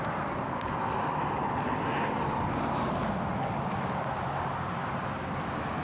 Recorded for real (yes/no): yes